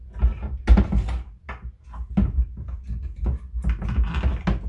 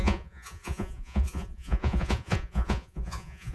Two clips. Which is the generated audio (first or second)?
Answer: second